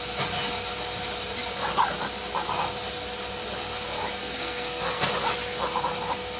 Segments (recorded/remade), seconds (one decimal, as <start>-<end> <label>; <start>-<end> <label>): 0.0-4.2 recorded; 4.2-5.1 remade; 5.1-6.4 recorded